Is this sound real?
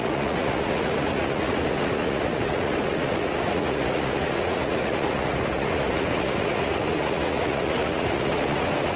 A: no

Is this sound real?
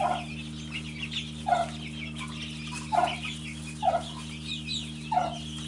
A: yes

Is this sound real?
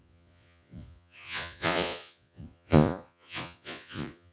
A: no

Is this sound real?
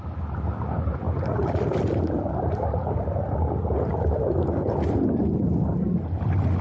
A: yes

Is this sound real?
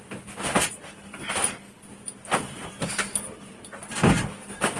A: yes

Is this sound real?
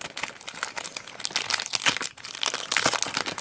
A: yes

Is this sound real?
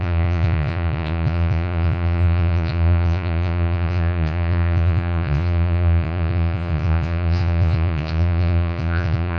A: no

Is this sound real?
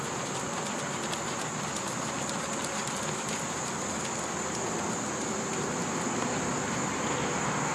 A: yes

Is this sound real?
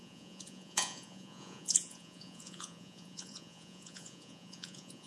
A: no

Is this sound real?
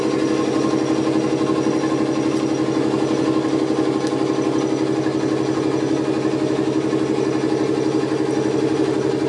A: yes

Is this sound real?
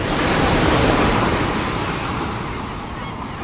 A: yes